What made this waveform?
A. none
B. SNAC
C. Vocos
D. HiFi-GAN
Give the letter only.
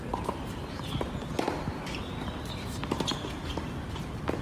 A